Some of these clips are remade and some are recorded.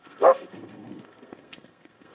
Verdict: remade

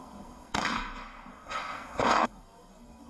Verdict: remade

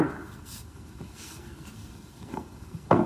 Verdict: remade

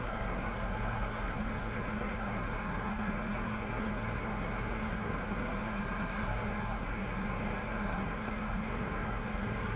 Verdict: remade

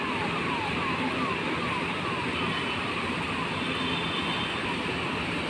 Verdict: recorded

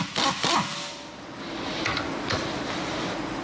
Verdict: recorded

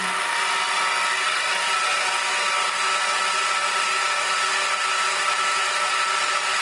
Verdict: recorded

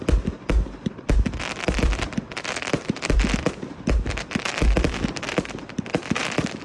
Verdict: recorded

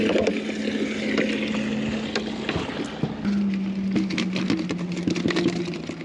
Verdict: recorded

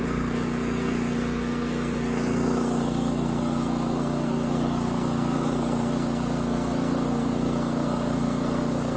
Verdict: remade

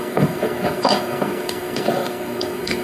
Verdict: remade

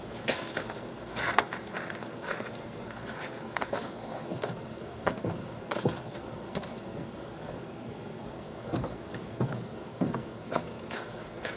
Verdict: remade